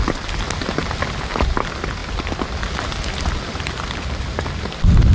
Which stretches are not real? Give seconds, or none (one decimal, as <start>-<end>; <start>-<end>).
none